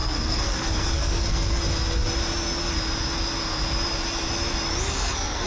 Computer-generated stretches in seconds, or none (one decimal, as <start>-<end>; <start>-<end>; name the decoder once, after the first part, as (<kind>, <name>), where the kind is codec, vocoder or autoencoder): 0.0-1.6 (codec, SNAC); 4.9-5.5